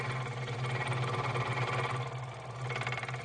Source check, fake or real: real